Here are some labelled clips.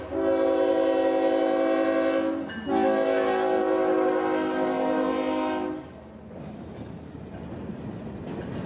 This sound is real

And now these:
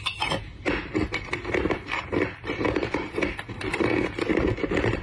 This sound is real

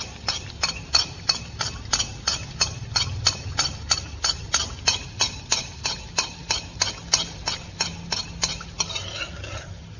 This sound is real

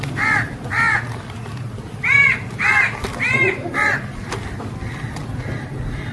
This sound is real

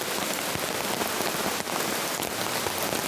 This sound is real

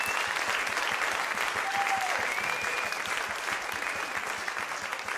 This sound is real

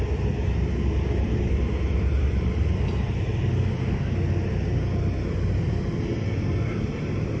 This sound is real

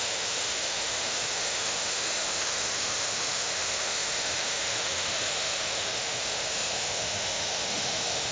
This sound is fake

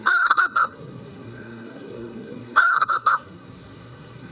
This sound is fake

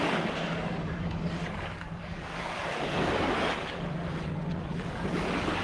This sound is fake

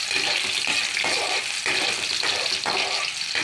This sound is real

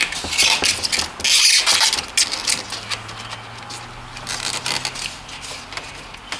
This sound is real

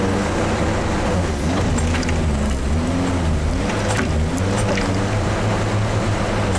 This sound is real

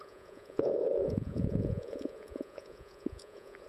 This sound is fake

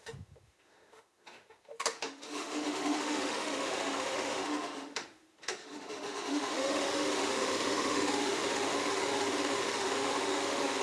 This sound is fake